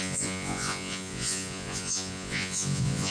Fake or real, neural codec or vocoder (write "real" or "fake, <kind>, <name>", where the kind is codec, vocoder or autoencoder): fake, vocoder, Vocos